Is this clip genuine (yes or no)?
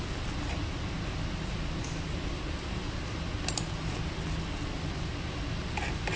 yes